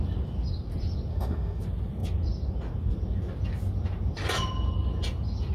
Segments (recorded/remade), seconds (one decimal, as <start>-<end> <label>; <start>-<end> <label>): 0.0-1.1 recorded; 1.1-1.6 remade; 1.6-5.5 recorded